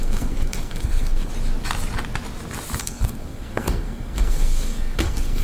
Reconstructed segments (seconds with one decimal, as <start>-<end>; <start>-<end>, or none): 0.0-1.3; 2.8-5.4